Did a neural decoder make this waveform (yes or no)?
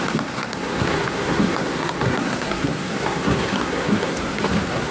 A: yes